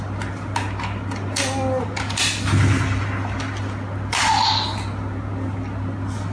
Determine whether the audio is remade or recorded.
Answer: recorded